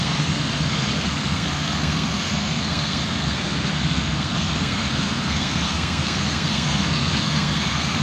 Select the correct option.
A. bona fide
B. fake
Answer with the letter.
B